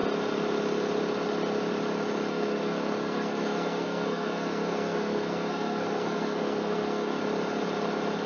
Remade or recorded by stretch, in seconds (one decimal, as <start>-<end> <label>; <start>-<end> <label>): 0.0-2.3 recorded; 2.3-7.2 remade; 7.2-8.3 recorded